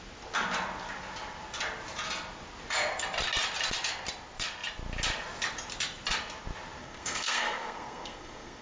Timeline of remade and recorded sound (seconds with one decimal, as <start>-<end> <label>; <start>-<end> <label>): 0.0-6.8 recorded; 6.8-8.6 remade